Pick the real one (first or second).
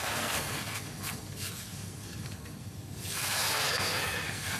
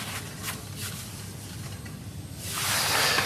second